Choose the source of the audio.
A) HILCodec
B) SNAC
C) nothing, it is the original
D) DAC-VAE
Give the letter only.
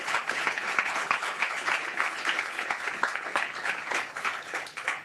A